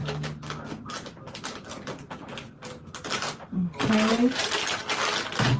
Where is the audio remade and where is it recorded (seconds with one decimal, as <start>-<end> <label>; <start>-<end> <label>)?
0.0-4.1 recorded; 4.1-4.8 remade; 4.8-5.6 recorded